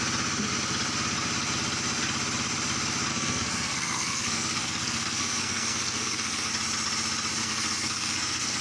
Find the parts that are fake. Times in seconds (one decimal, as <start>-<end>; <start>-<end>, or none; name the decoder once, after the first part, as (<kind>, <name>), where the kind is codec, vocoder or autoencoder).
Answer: 3.1-6.5 (codec, SNAC); 7.4-8.6